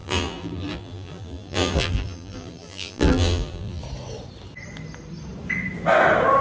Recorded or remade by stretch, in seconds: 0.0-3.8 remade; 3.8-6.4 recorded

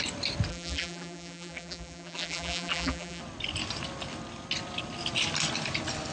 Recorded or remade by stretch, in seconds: 0.0-0.5 recorded; 0.5-3.2 remade; 3.2-6.1 recorded

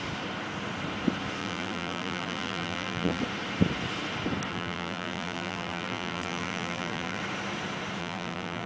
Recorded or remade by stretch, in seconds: 0.0-1.4 recorded; 1.4-3.2 remade; 3.2-4.5 recorded; 4.5-7.2 remade; 7.2-8.0 recorded; 8.0-8.7 remade

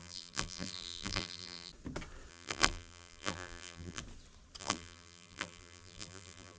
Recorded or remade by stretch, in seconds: 0.0-1.7 remade; 1.7-2.3 recorded; 2.3-4.0 remade; 4.0-4.6 recorded; 4.6-6.6 remade

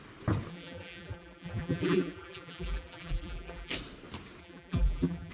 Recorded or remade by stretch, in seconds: 0.0-0.5 recorded; 0.5-3.7 remade; 3.7-4.4 recorded; 4.4-5.3 remade

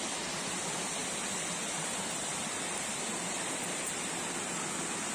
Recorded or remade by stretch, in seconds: 0.0-1.0 recorded; 1.0-1.5 remade; 1.5-5.1 recorded

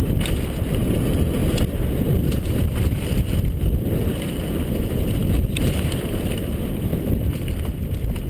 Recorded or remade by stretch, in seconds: 0.0-8.3 remade

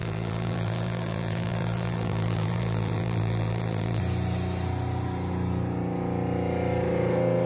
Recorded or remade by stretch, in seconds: 0.0-4.0 remade; 4.0-7.5 recorded